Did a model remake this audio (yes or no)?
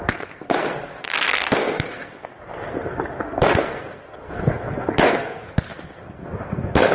yes